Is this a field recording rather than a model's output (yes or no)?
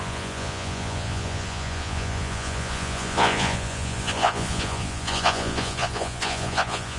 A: no